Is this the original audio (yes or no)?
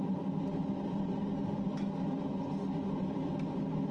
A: yes